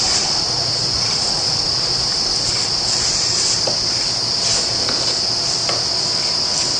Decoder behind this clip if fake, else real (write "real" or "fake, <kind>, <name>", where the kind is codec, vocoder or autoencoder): real